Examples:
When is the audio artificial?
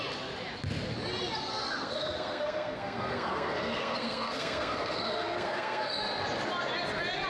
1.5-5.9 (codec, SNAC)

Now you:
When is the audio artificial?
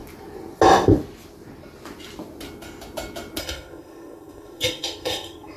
3.4-5.6 (codec, SNAC)